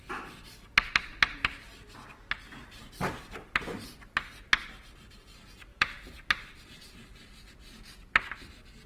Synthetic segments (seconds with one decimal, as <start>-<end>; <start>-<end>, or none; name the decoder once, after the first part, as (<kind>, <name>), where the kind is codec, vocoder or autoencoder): 5.7-6.8 (vocoder, BigVGAN v2)